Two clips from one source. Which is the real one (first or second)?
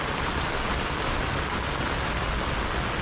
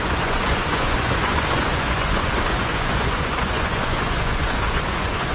first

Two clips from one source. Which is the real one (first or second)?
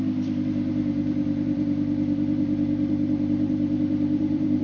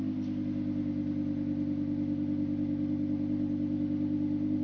second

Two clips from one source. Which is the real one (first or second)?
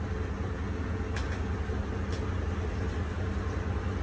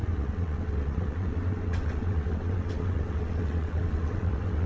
first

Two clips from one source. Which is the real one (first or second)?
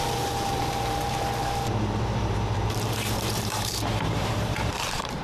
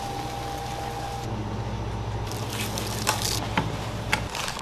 second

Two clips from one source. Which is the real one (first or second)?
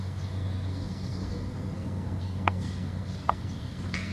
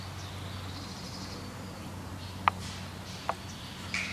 second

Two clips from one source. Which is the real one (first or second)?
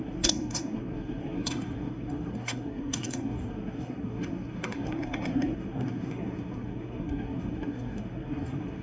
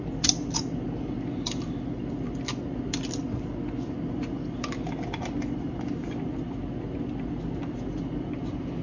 second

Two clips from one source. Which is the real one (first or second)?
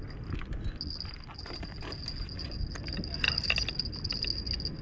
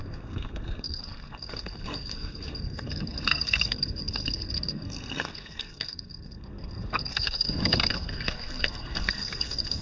first